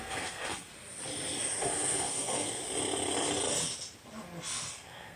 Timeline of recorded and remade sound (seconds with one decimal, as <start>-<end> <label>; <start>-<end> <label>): 0.0-0.7 remade; 0.7-1.6 recorded; 1.6-2.6 remade; 2.6-4.7 recorded; 4.7-5.2 remade